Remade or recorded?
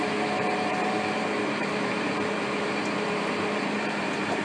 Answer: remade